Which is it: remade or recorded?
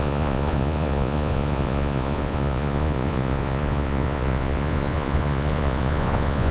remade